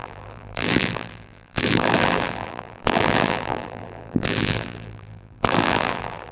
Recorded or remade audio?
remade